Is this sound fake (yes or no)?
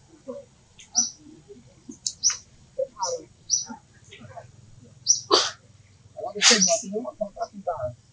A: no